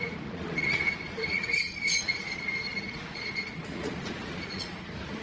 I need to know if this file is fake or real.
fake